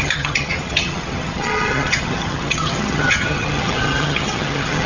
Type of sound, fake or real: fake